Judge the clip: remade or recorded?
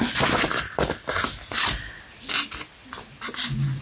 recorded